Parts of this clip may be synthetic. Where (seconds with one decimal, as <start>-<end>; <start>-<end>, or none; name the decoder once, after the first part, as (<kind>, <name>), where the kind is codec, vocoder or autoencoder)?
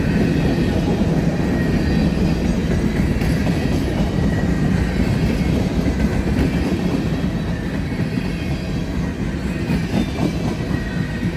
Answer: none